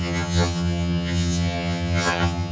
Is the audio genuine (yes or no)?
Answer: no